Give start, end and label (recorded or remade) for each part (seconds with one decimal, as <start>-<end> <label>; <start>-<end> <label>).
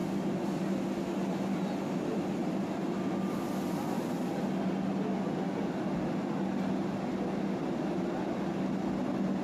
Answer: 0.0-9.4 recorded